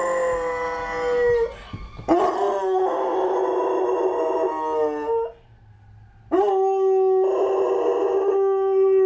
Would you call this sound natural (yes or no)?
yes